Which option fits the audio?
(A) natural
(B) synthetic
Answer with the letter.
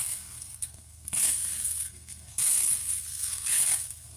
B